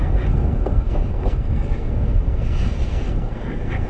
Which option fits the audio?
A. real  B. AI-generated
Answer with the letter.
B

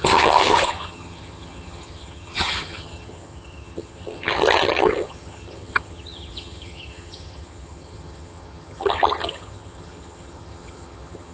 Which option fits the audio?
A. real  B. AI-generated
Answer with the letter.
B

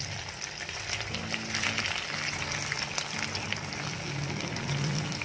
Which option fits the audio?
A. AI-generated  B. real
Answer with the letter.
B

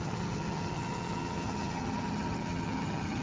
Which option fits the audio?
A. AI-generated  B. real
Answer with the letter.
A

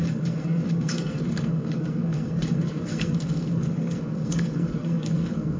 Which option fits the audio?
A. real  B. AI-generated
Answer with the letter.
B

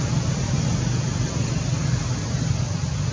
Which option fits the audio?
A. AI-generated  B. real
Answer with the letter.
B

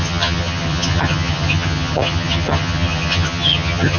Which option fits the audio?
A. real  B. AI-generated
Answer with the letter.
B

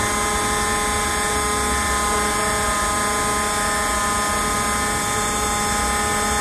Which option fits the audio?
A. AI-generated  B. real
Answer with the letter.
B